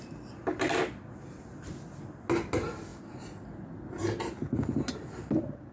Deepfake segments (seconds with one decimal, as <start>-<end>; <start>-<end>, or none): none